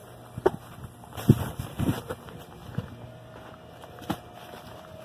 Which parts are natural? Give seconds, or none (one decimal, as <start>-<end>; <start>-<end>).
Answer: 2.2-5.0